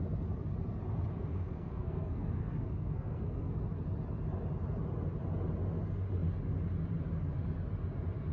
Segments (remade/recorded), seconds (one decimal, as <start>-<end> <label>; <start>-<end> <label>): 0.0-1.2 recorded; 1.2-3.6 remade; 3.6-8.3 recorded

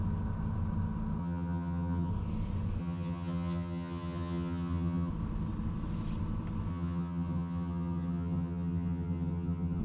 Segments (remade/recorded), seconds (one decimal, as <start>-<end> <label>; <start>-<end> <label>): 0.0-1.2 recorded; 1.2-2.1 remade; 2.1-2.8 recorded; 2.8-5.1 remade; 5.1-6.7 recorded; 6.7-9.8 remade

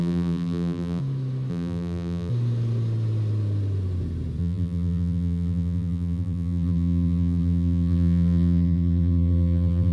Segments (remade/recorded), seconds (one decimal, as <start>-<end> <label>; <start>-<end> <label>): 0.0-1.0 remade; 1.0-1.5 recorded; 1.5-2.3 remade; 2.3-4.4 recorded; 4.4-9.9 remade